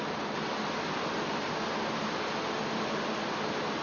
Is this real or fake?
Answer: real